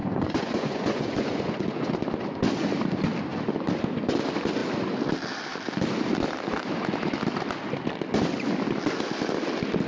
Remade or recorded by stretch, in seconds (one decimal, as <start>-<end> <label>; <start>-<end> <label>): 0.0-1.9 remade; 1.9-9.9 recorded